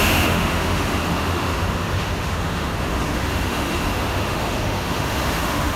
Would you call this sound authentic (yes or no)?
no